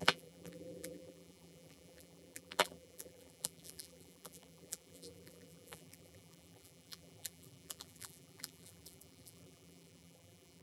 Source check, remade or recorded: remade